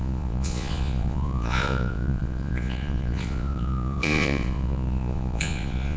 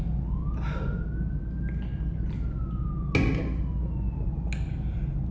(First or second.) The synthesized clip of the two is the first